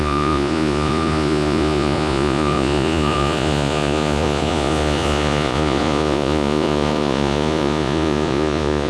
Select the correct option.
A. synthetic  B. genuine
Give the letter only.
A